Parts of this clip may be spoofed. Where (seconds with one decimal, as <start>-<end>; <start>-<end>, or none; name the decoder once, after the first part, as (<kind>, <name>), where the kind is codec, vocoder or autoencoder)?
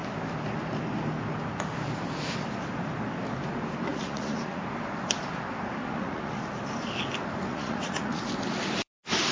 3.9-4.6 (vocoder, Vocos); 5.8-6.4; 7.5-8.2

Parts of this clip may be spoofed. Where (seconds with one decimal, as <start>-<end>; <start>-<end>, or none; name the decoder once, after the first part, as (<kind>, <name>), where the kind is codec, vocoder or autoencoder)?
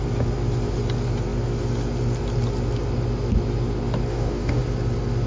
4.1-4.6 (codec, DAC)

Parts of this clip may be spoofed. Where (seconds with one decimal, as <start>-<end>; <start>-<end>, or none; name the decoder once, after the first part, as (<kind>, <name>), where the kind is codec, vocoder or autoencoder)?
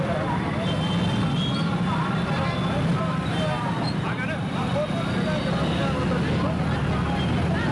none